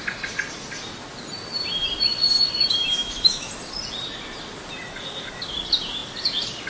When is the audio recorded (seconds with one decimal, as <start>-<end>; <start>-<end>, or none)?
0.0-2.8; 3.5-6.7